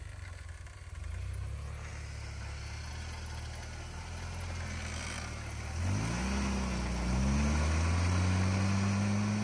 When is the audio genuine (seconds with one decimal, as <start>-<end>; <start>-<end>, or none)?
0.0-9.4

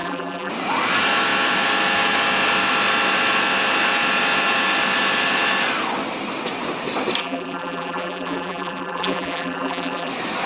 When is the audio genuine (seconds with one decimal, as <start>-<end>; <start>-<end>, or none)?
0.5-7.2; 10.1-10.5